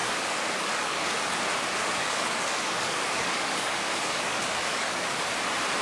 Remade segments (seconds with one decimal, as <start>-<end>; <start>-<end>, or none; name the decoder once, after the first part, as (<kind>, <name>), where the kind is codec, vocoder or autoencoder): 0.0-1.3 (codec, DAC); 1.8-5.3